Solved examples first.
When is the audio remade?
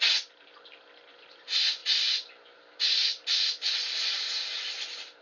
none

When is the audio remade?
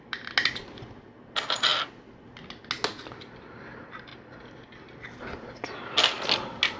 none